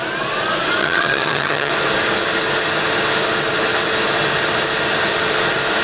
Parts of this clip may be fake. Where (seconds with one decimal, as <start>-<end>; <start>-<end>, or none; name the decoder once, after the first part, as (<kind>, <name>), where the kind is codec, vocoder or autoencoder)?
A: 0.8-1.7 (vocoder, HiFi-GAN)